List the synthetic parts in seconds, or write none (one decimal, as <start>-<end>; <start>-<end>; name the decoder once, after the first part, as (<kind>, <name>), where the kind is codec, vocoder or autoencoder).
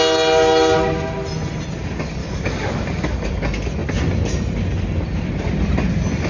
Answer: 2.2-3.3 (codec, DAC)